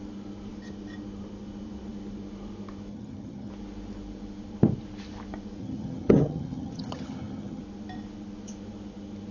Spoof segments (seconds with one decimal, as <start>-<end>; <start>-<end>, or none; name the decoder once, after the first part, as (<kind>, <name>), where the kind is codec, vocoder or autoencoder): 2.9-3.5 (vocoder, HiFi-GAN); 5.6-7.6